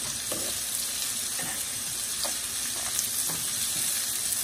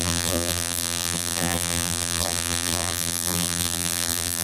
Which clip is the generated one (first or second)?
second